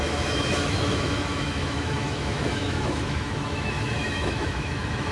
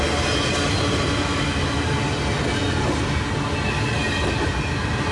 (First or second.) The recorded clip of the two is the second